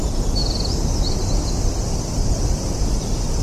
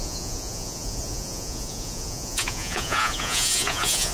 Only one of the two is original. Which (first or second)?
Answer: first